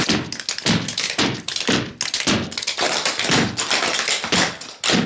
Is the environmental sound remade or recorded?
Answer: recorded